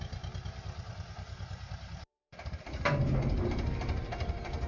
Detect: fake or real real